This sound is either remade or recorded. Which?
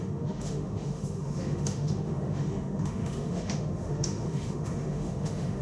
remade